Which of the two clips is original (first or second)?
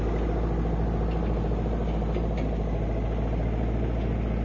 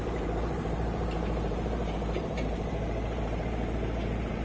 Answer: first